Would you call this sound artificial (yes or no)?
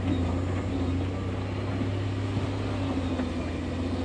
no